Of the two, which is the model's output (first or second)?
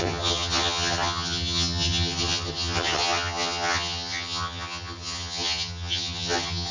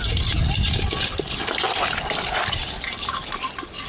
first